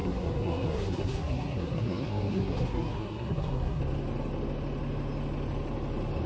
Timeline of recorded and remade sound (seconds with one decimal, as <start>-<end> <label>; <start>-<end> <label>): 0.0-3.8 remade; 3.8-6.3 recorded